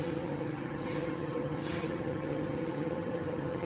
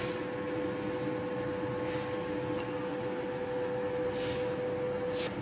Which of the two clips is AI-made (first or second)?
first